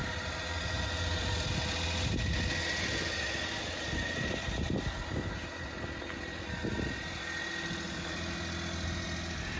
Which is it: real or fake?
real